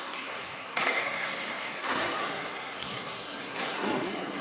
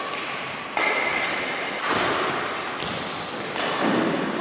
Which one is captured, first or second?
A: second